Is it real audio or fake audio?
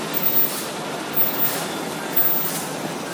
real